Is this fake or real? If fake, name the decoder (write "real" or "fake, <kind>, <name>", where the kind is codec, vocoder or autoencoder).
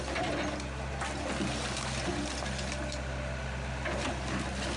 real